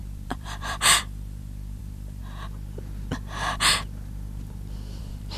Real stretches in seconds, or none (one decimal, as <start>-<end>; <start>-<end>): 2.2-5.0